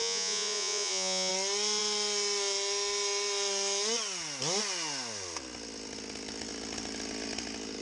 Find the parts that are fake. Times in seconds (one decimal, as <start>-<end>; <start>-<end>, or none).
0.0-1.3